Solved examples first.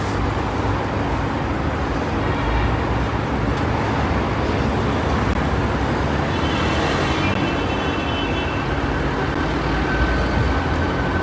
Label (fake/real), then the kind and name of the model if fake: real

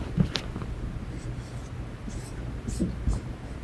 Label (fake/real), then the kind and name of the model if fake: real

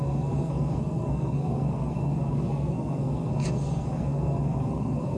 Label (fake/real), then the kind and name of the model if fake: fake, codec, SNAC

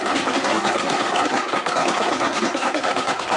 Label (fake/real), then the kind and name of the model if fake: fake, codec, SNAC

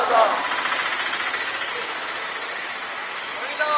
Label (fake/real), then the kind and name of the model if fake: real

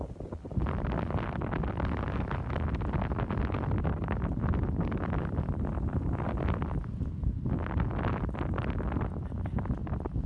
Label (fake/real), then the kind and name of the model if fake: real